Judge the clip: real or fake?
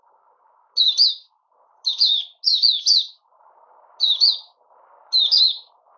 real